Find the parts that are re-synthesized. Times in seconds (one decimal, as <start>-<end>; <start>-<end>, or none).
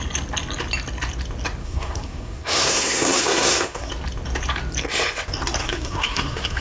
1.6-3.9; 5.6-6.6